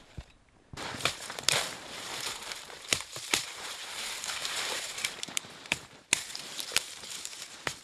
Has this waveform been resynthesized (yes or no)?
yes